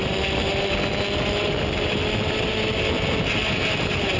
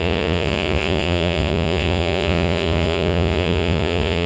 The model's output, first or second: second